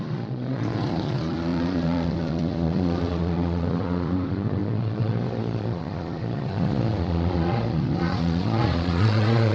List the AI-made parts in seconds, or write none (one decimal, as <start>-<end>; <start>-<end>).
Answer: 0.0-9.5